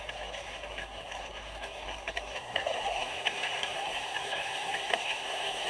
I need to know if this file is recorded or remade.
remade